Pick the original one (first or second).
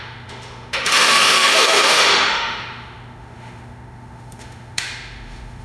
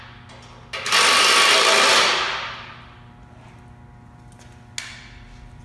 second